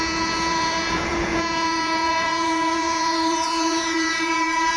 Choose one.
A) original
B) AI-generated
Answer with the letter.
B